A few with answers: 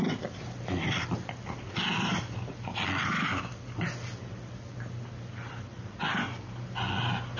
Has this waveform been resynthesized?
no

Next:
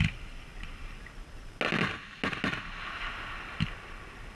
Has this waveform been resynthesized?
no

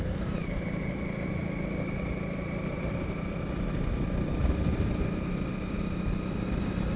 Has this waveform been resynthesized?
yes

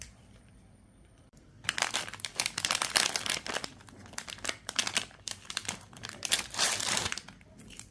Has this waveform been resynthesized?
yes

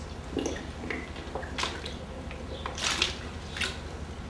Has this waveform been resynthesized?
no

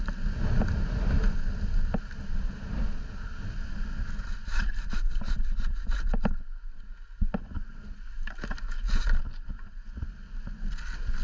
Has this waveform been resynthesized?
no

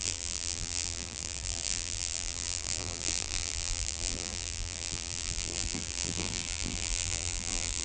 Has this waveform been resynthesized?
yes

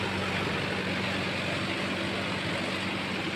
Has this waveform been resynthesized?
no